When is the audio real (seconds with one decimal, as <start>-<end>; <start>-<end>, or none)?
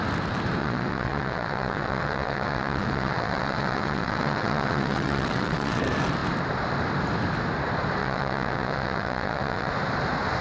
0.0-0.6; 5.8-8.0; 9.7-10.4